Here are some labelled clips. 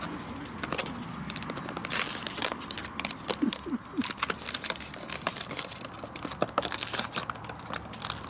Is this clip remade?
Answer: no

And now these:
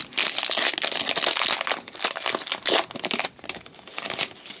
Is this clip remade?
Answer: no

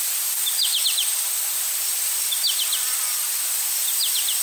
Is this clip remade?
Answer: no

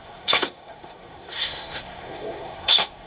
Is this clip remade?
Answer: yes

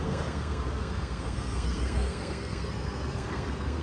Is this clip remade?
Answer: yes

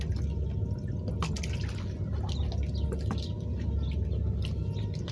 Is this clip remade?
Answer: no